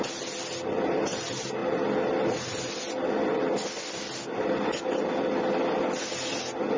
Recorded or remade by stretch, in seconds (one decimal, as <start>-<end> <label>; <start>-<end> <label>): 0.0-6.8 recorded